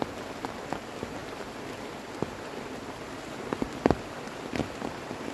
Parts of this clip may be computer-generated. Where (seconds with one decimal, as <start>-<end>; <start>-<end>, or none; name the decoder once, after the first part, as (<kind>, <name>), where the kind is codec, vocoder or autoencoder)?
1.2-4.4 (vocoder, BigVGAN v2)